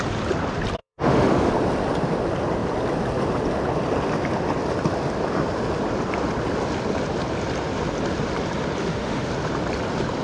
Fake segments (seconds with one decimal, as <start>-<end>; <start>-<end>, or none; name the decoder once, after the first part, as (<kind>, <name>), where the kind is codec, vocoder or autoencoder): 0.8-1.5 (autoencoder, DAC-VAE); 8.8-9.3

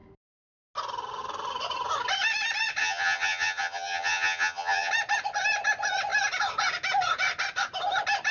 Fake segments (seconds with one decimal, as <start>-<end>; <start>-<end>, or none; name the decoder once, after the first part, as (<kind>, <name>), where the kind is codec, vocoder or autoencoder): 2.8-4.9 (vocoder, HiFi-GAN)

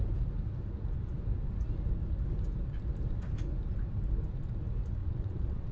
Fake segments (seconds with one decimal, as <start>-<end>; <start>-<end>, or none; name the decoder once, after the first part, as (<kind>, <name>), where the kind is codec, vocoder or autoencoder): 5.0-5.7 (vocoder, WaveNeXt)